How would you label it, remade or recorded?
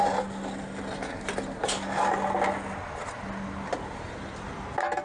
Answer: recorded